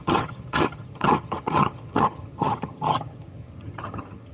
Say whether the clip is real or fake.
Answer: fake